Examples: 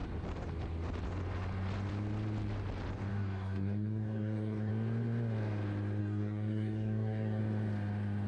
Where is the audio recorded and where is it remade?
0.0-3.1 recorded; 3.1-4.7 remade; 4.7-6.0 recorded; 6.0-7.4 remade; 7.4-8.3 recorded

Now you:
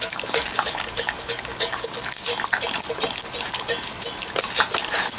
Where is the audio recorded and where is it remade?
0.0-2.3 remade; 2.3-5.2 recorded

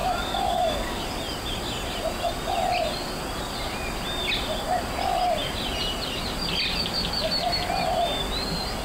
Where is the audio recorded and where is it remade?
0.0-1.0 remade; 1.0-8.8 recorded

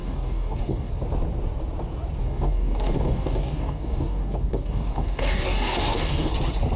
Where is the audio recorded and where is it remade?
0.0-0.9 remade; 0.9-2.2 recorded; 2.2-6.3 remade; 6.3-6.8 recorded

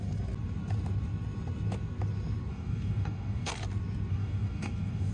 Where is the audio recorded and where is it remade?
0.0-2.5 recorded; 2.5-3.5 remade; 3.5-4.1 recorded; 4.1-5.1 remade

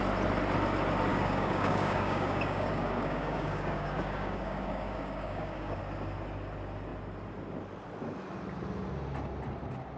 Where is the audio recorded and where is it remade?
0.0-1.1 recorded; 1.1-5.8 remade; 5.8-10.0 recorded